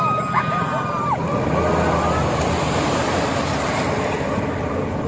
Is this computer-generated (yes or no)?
no